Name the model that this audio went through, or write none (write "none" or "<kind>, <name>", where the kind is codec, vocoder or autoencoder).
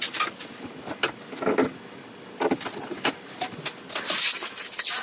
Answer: none